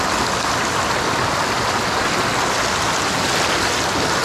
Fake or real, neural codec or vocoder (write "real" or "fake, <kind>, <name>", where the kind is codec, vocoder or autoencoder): real